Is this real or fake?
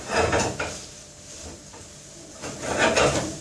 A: real